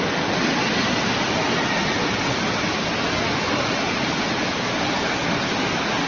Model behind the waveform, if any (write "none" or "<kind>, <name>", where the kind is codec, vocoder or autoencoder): none